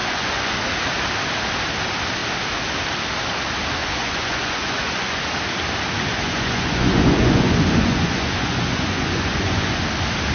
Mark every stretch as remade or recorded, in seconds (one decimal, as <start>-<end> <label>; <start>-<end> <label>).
0.0-0.6 remade; 0.6-3.8 recorded; 3.8-5.2 remade; 5.2-6.1 recorded; 6.1-9.8 remade; 9.8-10.3 recorded